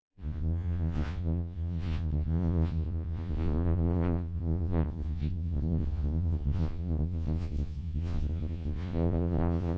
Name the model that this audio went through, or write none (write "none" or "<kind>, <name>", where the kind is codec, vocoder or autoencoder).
vocoder, Vocos